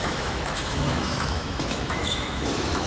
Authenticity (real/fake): fake